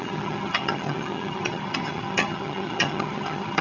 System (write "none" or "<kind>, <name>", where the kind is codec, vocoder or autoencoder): vocoder, HiFi-GAN